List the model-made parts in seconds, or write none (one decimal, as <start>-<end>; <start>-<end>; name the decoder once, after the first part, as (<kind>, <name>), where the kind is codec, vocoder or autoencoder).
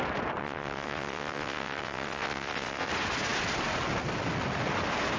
0.4-2.9 (vocoder, WaveNeXt)